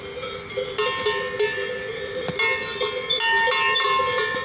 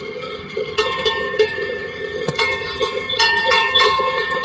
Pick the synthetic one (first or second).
second